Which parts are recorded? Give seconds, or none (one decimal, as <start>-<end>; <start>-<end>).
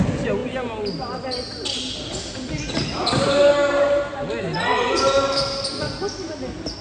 0.0-6.8